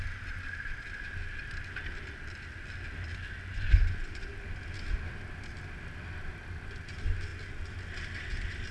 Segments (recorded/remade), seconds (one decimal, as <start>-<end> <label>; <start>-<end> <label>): 0.0-8.7 recorded